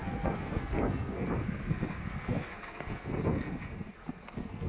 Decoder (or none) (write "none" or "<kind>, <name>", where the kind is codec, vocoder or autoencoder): codec, SNAC